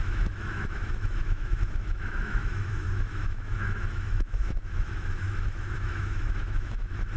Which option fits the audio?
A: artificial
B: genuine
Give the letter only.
A